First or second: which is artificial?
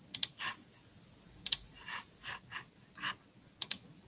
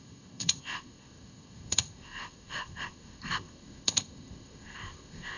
second